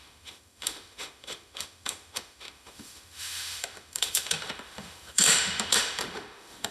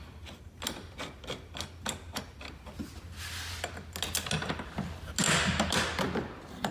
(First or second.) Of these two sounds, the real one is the second